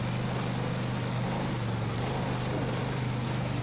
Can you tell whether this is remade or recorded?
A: recorded